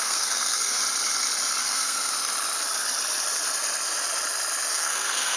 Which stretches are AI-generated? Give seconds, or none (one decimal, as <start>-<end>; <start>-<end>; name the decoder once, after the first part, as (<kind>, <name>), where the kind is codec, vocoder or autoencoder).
0.0-0.8 (codec, SNAC); 1.6-2.1; 4.7-5.4